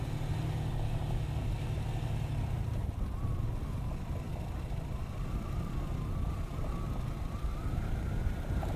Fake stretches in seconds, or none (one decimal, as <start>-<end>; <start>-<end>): 7.5-8.8